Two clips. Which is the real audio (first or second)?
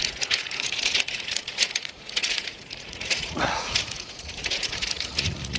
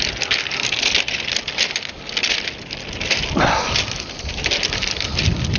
second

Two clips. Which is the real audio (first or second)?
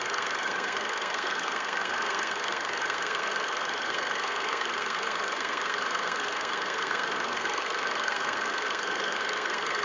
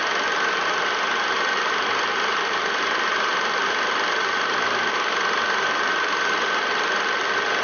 second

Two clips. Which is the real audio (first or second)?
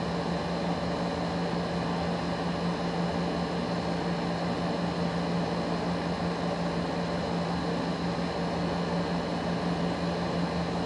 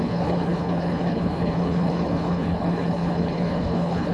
first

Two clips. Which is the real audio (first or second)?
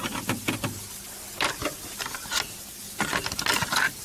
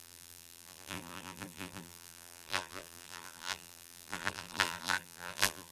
first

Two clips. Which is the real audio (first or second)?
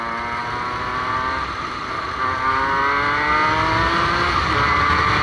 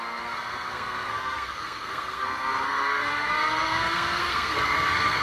first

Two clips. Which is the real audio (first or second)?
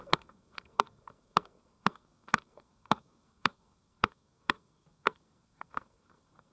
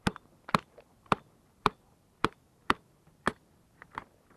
second